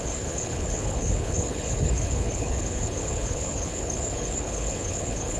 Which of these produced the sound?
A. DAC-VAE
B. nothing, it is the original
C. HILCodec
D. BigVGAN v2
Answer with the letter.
C